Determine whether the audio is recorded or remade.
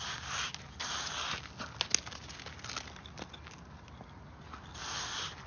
recorded